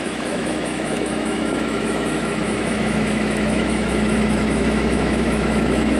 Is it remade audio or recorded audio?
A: remade